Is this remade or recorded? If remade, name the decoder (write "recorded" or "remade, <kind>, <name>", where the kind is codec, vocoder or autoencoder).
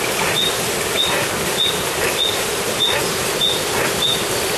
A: recorded